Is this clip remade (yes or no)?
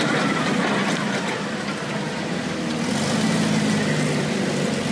no